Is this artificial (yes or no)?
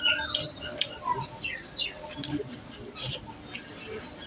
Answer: no